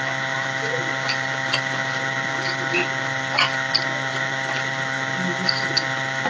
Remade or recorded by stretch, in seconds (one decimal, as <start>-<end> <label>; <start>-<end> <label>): 0.0-6.3 recorded